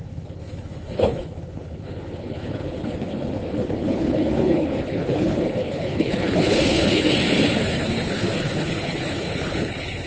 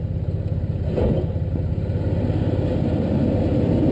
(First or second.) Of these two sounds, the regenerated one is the first